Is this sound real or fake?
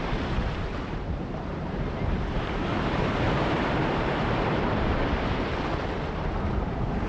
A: fake